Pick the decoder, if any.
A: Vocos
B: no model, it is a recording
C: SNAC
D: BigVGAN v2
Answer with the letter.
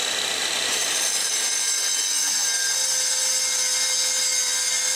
B